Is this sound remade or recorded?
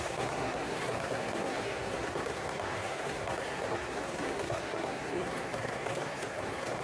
remade